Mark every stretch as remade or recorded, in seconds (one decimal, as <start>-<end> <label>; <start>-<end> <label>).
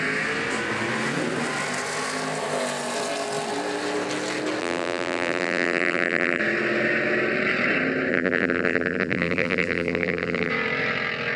0.0-4.6 recorded; 4.6-6.4 remade; 6.4-8.1 recorded; 8.1-10.5 remade; 10.5-11.4 recorded